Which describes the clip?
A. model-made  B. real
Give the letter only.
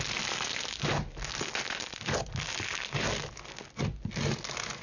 B